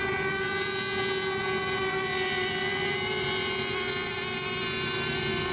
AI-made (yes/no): no